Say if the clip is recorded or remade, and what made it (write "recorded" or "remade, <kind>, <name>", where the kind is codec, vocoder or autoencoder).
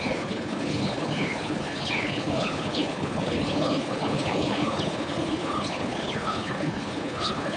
remade, codec, HILCodec